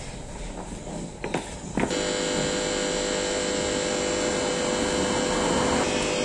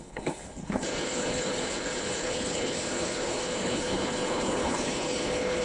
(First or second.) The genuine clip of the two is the first